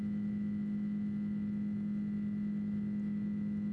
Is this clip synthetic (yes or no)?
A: no